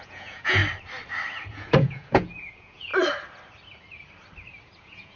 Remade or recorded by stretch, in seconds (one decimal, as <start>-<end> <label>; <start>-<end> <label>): 0.0-0.6 remade; 0.6-1.5 recorded; 1.5-2.9 remade; 2.9-4.8 recorded; 4.8-5.2 remade